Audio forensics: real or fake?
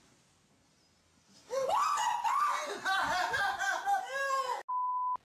real